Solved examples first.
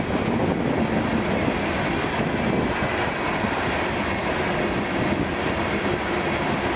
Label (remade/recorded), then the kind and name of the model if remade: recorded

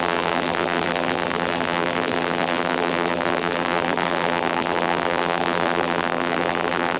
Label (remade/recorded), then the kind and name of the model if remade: remade, vocoder, BigVGAN v2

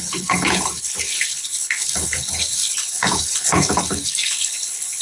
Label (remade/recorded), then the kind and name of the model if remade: remade, codec, HILCodec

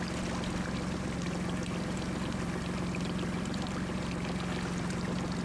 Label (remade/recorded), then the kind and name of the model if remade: recorded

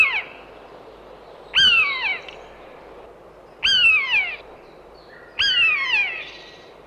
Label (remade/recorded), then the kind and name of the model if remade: recorded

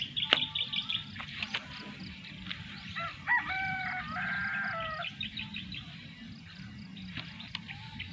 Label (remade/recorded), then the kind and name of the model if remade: remade, vocoder, BigVGAN v2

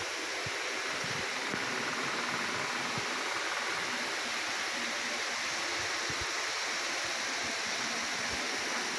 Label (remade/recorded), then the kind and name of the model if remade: recorded